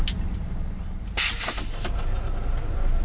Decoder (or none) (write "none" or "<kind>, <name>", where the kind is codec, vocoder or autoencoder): none